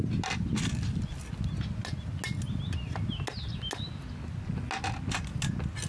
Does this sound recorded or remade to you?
recorded